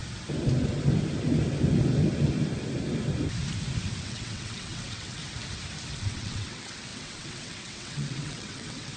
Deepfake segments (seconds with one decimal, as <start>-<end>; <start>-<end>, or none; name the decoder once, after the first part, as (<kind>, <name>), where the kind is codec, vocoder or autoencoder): 4.0-5.2 (vocoder, WaveNeXt); 6.0-9.0